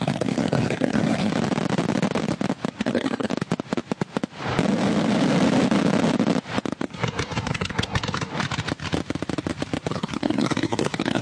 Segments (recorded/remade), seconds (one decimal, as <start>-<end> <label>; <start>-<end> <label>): 0.0-1.3 remade; 1.3-2.7 recorded; 2.7-3.3 remade; 3.3-6.8 recorded; 6.8-8.3 remade; 8.3-9.9 recorded; 9.9-11.2 remade